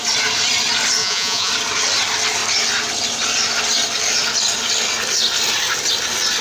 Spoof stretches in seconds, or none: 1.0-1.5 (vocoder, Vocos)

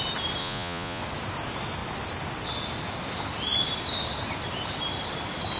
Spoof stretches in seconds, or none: 0.4-1.0 (vocoder, Vocos)

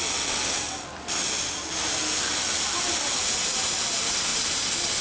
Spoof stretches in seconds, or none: none

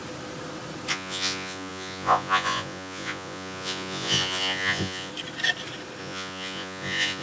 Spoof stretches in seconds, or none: 0.9-5.1 (vocoder, Vocos); 6.0-7.2

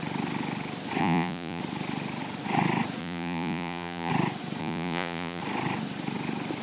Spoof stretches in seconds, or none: 1.0-1.6 (vocoder, Vocos); 3.0-4.1; 4.6-5.4